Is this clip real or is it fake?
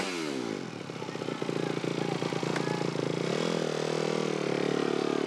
real